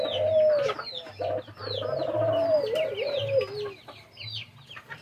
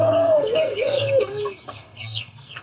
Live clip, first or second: first